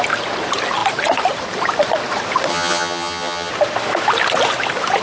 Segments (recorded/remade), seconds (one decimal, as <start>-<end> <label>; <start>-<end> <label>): 0.0-2.5 recorded; 2.5-3.5 remade; 3.5-5.0 recorded